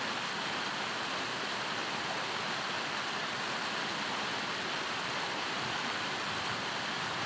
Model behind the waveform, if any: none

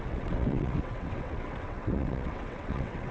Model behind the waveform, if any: vocoder, WaveNeXt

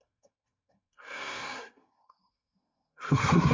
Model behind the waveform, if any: codec, SNAC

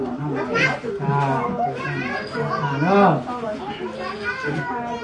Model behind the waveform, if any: none